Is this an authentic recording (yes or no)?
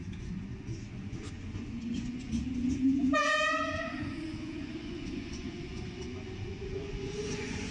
no